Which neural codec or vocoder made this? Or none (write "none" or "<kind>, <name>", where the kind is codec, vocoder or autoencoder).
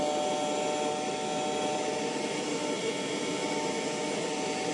none